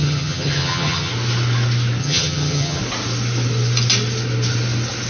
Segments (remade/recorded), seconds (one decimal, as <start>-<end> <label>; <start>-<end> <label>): 0.0-1.1 remade; 1.1-2.0 recorded; 2.0-2.8 remade; 2.8-5.1 recorded